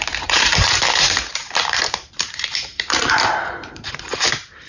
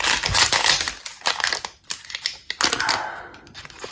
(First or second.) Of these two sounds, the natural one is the second